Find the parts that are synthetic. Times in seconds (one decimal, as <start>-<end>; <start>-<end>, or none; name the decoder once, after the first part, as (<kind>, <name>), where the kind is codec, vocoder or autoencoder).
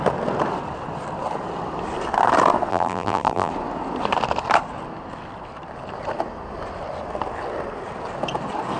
2.7-3.5 (vocoder, BigVGAN v2)